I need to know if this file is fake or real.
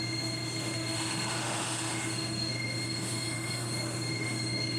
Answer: fake